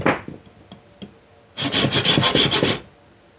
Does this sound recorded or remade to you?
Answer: recorded